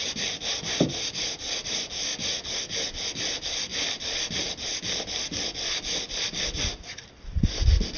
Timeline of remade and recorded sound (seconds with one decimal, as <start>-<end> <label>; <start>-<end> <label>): 0.0-2.1 remade; 2.1-3.1 recorded; 3.1-8.0 remade